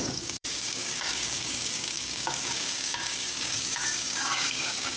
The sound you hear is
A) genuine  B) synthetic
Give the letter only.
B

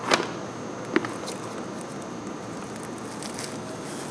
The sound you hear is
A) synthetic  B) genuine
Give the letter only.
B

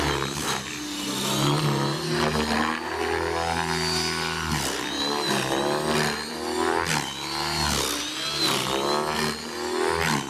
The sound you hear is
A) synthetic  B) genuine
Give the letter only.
B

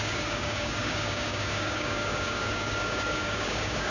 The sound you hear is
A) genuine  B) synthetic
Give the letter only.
B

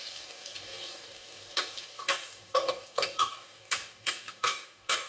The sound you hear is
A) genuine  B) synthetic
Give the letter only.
B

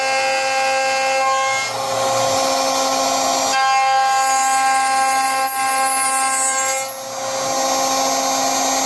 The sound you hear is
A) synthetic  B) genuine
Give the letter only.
B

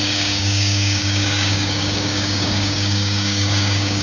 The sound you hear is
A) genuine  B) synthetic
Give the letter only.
B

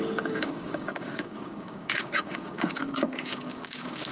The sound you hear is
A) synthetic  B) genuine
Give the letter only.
A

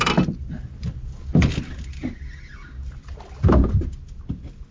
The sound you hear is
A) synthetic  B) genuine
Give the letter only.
B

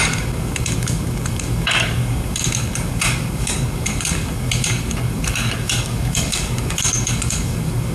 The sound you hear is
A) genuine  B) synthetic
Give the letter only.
B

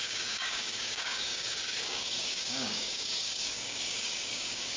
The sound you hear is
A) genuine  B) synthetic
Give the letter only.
B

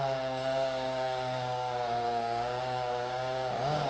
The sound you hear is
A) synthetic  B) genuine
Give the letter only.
A